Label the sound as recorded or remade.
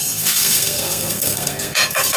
remade